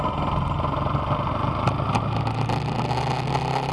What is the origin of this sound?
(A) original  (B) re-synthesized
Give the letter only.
A